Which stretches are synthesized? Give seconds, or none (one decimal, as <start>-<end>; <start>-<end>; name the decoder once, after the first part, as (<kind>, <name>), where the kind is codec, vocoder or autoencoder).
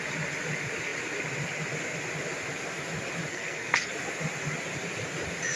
3.3-3.9 (codec, SNAC)